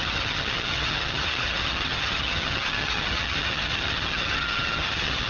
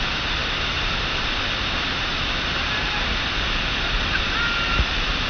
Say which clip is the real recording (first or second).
second